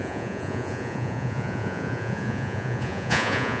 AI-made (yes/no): yes